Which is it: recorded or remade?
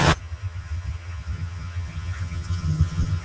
remade